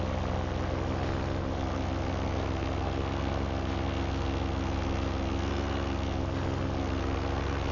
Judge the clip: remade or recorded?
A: recorded